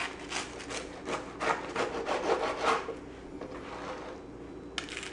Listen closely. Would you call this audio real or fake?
real